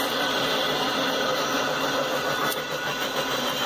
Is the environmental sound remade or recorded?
recorded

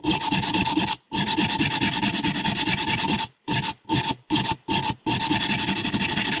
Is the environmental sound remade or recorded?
recorded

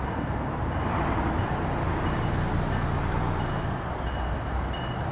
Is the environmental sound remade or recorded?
recorded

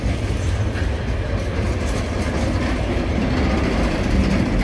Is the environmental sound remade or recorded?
recorded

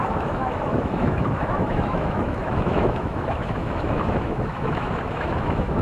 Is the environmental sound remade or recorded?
remade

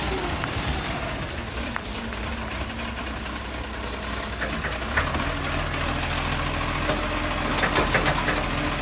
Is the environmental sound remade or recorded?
recorded